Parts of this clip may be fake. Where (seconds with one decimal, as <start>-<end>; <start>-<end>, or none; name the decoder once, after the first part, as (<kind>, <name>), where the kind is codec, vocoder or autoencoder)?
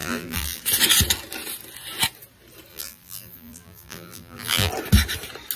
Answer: 0.0-0.6 (vocoder, BigVGAN v2); 2.7-4.7